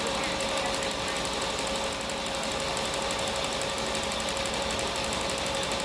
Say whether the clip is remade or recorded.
recorded